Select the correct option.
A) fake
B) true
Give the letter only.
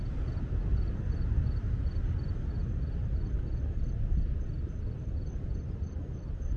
B